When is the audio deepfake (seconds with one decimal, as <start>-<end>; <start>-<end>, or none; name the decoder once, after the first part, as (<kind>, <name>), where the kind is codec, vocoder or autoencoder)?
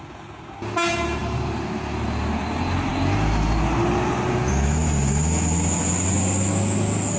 none